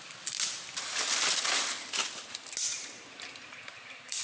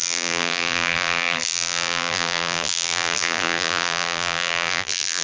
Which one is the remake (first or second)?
second